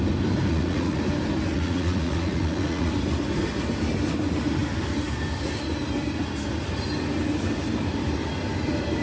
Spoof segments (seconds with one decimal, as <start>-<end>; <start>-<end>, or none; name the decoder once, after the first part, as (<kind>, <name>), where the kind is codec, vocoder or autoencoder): 0.5-1.0 (vocoder, Vocos); 1.5-2.9